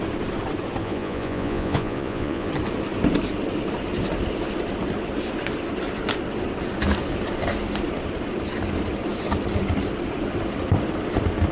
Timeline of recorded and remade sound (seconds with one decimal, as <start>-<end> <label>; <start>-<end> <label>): 0.0-0.8 recorded; 0.8-2.5 remade; 2.5-11.5 recorded